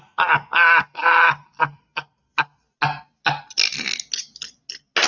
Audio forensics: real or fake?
real